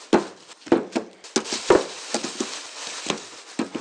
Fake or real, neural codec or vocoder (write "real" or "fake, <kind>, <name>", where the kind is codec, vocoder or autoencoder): real